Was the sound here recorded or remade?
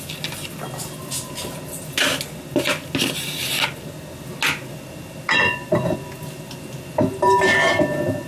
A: recorded